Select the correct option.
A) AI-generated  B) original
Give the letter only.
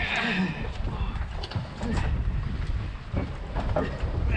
B